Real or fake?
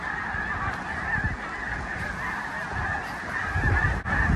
real